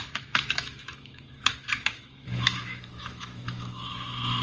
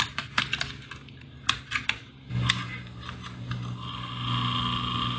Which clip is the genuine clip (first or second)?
second